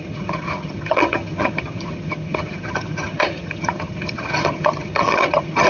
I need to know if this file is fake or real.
fake